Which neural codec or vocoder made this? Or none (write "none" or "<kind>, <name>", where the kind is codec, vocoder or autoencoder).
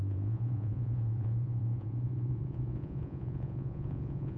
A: vocoder, Vocos